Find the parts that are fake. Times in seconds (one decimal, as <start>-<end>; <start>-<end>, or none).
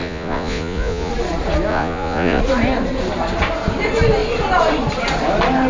0.0-1.1; 1.7-2.4